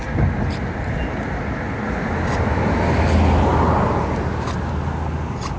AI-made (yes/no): no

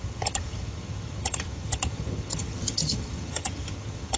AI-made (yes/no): yes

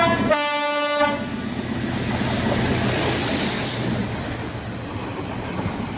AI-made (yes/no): no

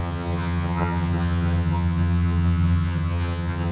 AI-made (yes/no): yes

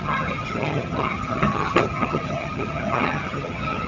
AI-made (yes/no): yes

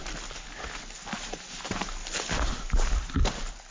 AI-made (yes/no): no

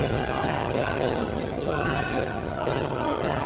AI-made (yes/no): yes